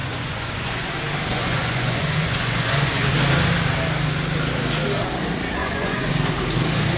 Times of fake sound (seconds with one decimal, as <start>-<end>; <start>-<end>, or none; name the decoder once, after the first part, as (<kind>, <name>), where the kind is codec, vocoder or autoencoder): 0.0-0.9 (vocoder, Vocos); 1.3-3.1; 5.6-6.1